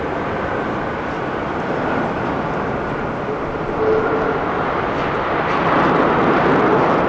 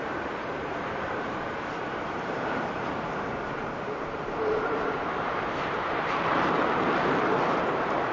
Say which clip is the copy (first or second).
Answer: second